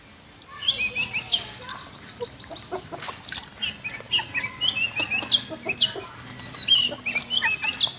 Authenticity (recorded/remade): recorded